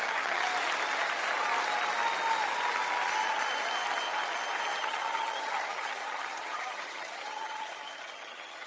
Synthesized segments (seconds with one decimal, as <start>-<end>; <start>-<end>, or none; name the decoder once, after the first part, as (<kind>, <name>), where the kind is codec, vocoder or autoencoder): 0.0-0.5 (vocoder, HiFi-GAN); 4.8-8.7